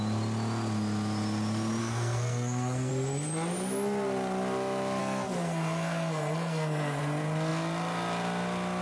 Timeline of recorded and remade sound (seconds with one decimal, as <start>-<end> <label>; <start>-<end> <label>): 0.0-1.8 recorded; 1.8-2.9 remade; 2.9-5.0 recorded; 5.0-7.0 remade; 7.0-8.8 recorded